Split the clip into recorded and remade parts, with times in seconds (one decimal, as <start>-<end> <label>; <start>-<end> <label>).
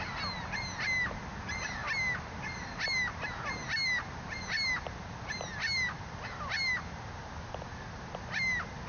0.0-8.9 recorded